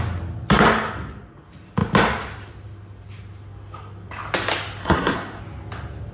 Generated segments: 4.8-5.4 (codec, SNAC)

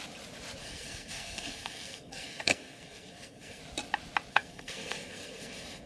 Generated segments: 0.6-3.6 (codec, SNAC); 4.3-5.9

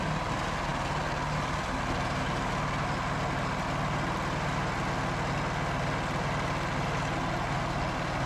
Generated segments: none

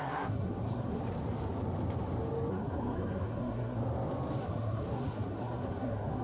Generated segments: 0.0-1.0 (codec, SNAC); 2.5-3.8; 4.4-6.2

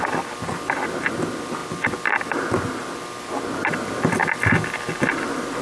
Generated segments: none

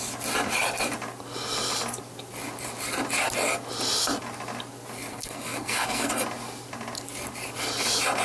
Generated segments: 5.1-6.1 (codec, SNAC)

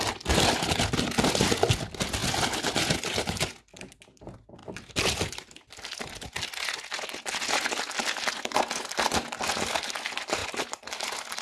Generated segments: none

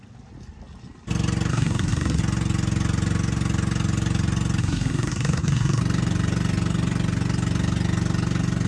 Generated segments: 1.5-2.2 (codec, SNAC); 4.6-5.8